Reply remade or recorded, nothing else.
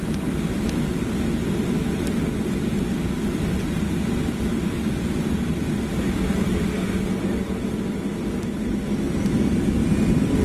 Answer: recorded